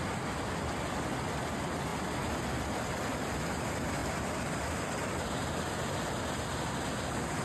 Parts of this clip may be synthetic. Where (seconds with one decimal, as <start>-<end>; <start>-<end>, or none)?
4.0-5.3